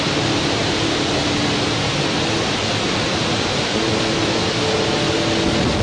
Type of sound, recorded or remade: recorded